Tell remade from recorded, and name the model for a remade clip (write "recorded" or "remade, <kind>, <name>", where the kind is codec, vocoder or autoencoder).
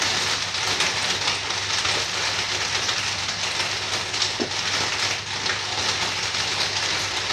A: recorded